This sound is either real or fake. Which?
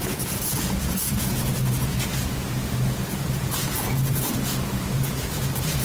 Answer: fake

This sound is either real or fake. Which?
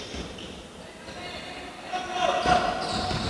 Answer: real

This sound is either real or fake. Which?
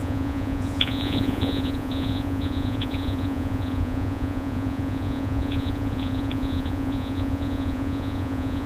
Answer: fake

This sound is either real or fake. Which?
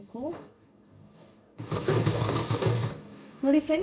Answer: fake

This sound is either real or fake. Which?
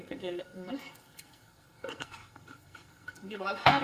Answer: fake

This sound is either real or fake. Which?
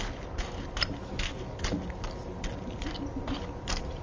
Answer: real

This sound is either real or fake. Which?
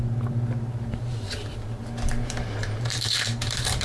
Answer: fake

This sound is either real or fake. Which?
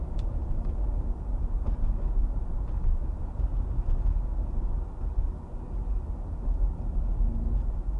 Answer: real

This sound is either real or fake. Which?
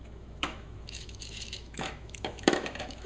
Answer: fake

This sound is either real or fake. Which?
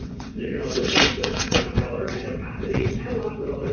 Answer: fake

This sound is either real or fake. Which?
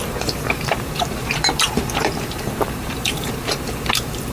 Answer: fake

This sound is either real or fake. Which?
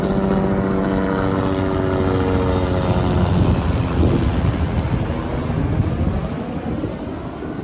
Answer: real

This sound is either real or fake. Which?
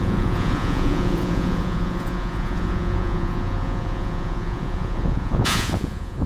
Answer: fake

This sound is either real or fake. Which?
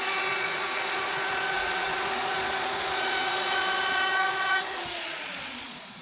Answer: fake